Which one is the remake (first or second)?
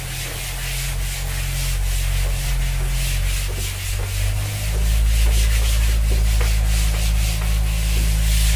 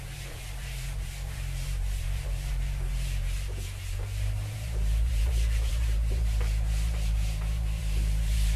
second